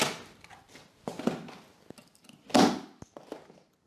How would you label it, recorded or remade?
recorded